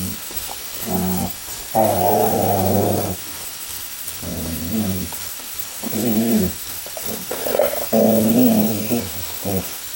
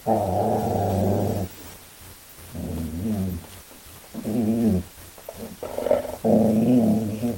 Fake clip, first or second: first